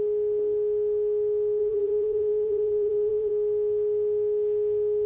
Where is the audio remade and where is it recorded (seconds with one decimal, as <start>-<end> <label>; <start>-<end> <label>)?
0.0-1.6 recorded; 1.6-3.3 remade; 3.3-5.1 recorded